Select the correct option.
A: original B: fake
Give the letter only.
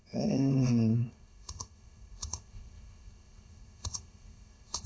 B